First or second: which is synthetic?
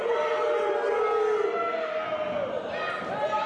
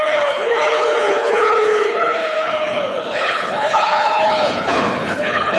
second